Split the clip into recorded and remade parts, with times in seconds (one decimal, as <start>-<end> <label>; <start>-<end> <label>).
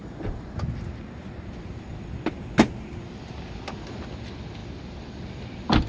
0.0-4.6 recorded; 4.6-5.4 remade; 5.4-5.9 recorded